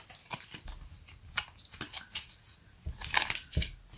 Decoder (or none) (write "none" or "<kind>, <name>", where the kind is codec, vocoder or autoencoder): none